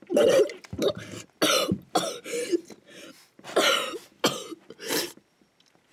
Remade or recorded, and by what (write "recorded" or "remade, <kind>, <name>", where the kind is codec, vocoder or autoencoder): recorded